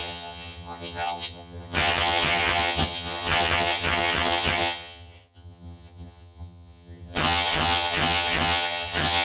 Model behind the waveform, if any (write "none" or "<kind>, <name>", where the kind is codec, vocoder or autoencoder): vocoder, HiFi-GAN